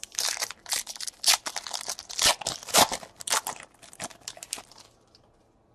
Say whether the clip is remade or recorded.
recorded